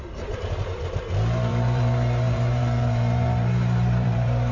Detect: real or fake fake